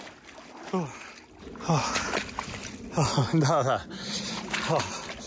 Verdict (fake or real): real